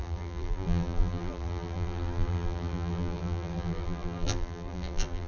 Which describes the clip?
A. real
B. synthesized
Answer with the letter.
B